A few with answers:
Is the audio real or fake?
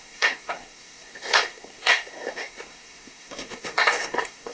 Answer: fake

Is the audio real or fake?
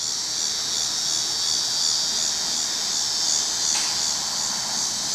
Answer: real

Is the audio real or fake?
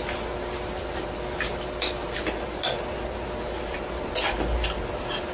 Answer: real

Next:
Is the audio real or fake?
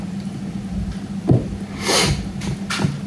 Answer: real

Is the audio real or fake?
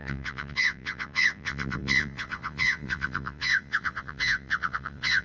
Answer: fake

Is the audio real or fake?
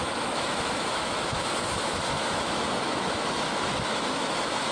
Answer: fake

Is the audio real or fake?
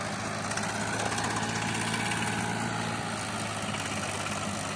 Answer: real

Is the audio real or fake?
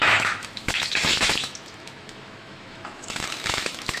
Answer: fake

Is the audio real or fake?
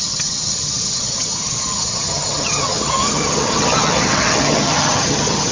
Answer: fake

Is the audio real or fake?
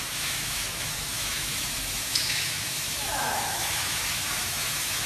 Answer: fake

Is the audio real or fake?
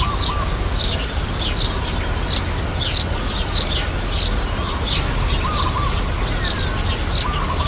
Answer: real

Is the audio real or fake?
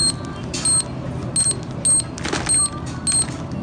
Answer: real